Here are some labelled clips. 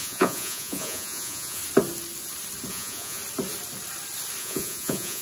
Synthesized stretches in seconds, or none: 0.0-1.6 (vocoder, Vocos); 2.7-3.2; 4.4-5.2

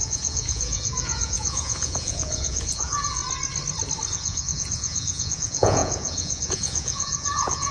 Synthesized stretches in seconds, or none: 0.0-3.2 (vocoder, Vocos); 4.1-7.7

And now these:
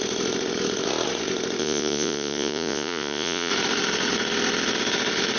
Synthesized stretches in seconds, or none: 1.6-3.5 (vocoder, Vocos)

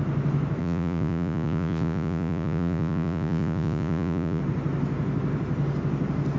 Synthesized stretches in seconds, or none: 0.6-4.4 (vocoder, Vocos)